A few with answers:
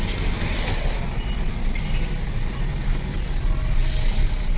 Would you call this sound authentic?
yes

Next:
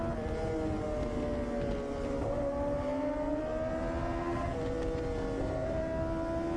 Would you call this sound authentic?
yes